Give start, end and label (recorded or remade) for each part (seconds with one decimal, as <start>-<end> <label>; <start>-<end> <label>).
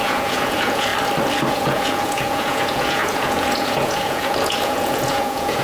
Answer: 0.0-0.9 remade; 0.9-1.5 recorded; 1.5-5.6 remade